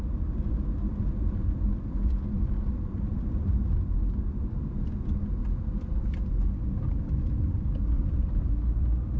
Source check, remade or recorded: remade